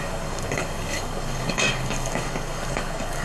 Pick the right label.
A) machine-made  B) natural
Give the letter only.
A